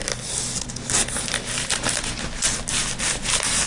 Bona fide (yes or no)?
yes